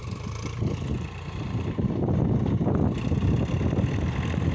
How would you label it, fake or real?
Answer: real